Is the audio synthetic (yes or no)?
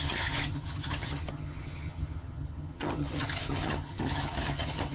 yes